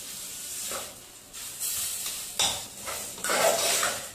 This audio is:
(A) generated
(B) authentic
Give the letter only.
B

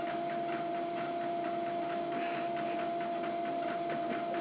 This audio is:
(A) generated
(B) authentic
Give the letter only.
B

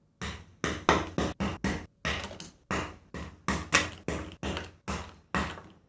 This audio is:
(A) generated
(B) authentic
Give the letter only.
B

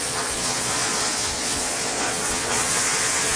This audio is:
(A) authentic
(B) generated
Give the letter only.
B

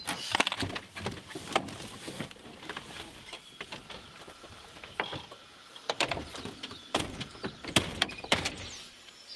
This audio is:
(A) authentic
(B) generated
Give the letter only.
A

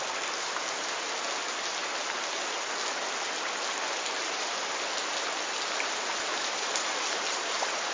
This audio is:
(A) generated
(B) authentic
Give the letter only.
B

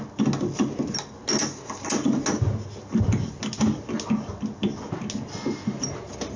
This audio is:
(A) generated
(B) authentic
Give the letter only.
B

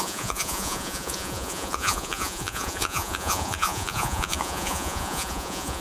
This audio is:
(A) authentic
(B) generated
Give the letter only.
B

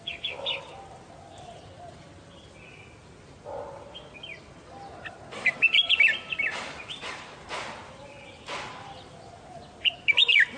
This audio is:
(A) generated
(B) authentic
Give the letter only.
B